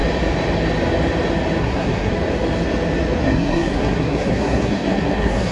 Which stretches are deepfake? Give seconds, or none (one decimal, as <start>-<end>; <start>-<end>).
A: 1.6-2.1; 3.2-5.5